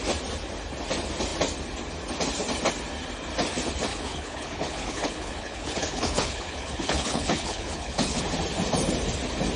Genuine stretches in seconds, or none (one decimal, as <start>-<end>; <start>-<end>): 0.0-3.9; 8.2-9.6

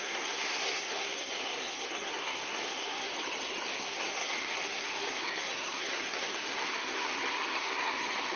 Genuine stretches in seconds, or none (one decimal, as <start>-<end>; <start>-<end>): 3.1-3.7

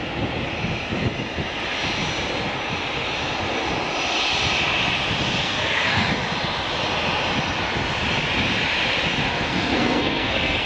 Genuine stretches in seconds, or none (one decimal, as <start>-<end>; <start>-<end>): 0.0-5.4; 6.1-9.3

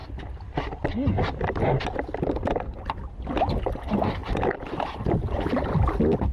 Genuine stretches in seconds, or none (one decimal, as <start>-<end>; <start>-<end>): 0.0-4.2

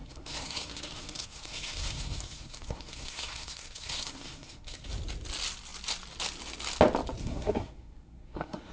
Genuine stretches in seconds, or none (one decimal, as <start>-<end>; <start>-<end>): 4.9-7.2

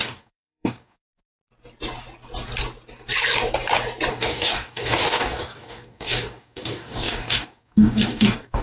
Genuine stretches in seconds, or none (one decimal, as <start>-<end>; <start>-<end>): 1.4-4.1

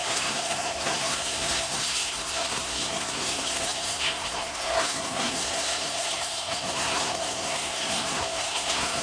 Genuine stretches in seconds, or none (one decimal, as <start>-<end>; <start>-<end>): none